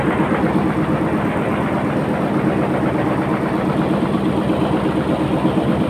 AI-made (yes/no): no